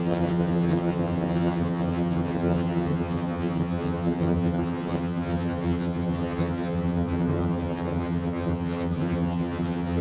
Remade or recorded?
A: remade